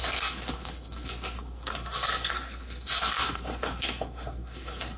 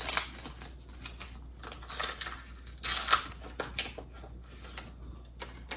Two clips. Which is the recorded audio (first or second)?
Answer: second